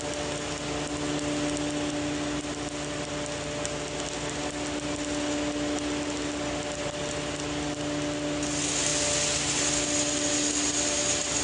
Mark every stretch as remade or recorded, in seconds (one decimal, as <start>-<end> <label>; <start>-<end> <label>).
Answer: 0.0-11.4 recorded